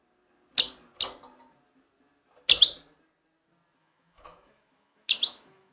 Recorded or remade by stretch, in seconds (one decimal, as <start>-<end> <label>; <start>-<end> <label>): 0.0-3.8 recorded; 3.8-5.7 remade

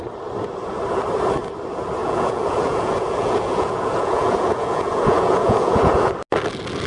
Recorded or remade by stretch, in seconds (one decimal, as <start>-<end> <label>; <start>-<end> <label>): 0.0-2.0 recorded; 2.0-6.1 remade; 6.1-6.9 recorded

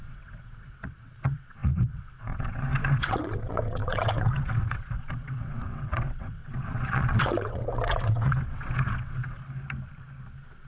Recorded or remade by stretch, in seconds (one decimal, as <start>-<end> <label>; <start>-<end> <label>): 0.0-9.4 remade; 9.4-10.7 recorded

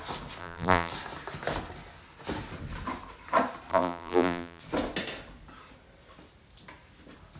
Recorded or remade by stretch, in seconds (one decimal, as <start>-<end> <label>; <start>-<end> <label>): 0.0-0.4 recorded; 0.4-0.9 remade; 0.9-3.7 recorded; 3.7-4.6 remade; 4.6-7.4 recorded

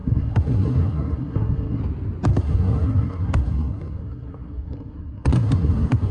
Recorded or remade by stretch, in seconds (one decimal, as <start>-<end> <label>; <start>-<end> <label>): 0.0-1.8 remade; 1.8-2.3 recorded; 2.3-6.1 remade